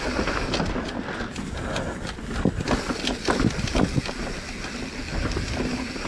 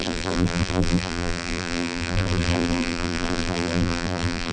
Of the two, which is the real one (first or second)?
first